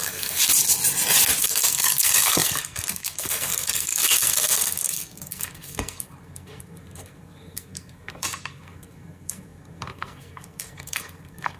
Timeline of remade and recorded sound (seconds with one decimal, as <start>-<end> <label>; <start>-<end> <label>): 0.0-0.4 remade; 0.4-1.4 recorded; 1.4-11.6 remade